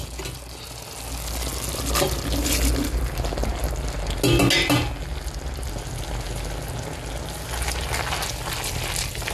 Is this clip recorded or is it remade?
recorded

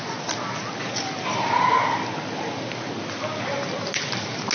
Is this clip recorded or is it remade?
recorded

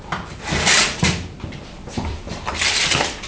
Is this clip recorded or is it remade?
remade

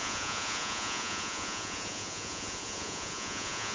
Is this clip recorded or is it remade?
remade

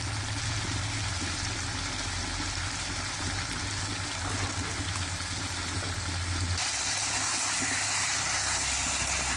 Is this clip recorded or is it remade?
recorded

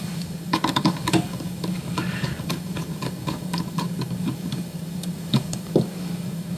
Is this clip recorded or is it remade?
remade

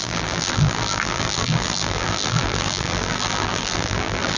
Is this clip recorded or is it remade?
remade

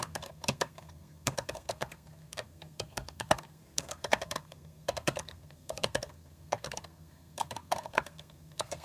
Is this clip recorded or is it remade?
remade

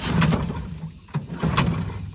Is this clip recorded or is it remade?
recorded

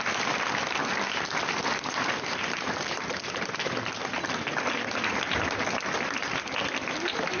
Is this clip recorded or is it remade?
recorded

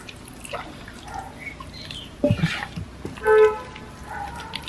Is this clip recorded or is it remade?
recorded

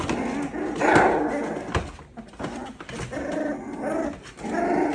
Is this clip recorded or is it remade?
recorded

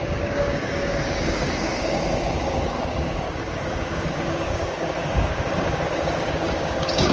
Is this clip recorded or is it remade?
remade